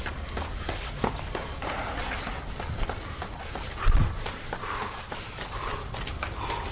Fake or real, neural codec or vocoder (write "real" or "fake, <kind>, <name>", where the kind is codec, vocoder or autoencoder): real